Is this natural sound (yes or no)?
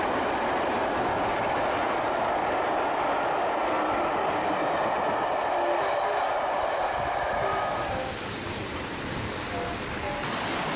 yes